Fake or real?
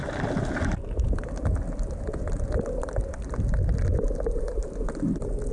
real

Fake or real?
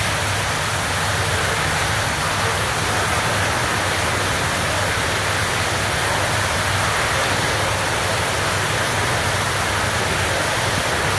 real